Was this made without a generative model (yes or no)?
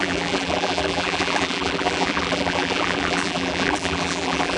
no